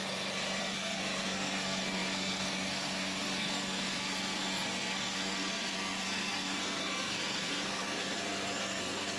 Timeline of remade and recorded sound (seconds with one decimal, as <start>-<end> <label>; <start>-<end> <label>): 0.0-0.6 recorded; 0.6-9.2 remade

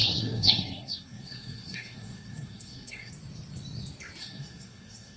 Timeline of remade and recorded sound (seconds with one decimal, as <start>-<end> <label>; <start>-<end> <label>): 0.0-3.1 remade; 3.1-4.2 recorded; 4.2-5.2 remade